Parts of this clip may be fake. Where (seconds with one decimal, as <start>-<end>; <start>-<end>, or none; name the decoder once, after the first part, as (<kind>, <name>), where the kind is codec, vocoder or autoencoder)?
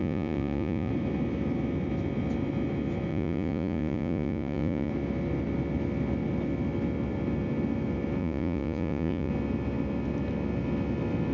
0.0-0.9 (vocoder, Vocos); 3.1-4.9; 8.2-9.3